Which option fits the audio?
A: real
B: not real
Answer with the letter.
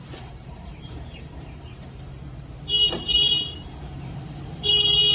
B